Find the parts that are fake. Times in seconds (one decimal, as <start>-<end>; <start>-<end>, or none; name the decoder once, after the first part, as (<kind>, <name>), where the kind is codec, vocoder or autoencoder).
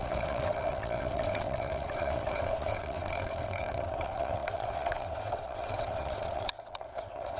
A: 0.0-7.4 (vocoder, WaveNeXt)